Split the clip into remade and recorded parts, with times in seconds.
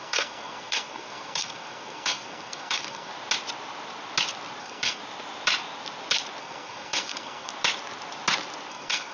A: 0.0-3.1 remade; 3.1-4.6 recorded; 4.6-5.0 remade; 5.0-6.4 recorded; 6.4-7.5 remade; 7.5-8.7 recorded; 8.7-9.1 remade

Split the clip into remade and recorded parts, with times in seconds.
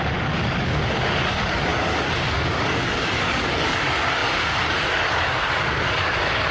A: 0.0-6.5 remade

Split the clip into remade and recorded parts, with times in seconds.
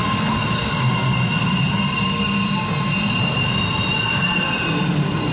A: 0.0-5.3 recorded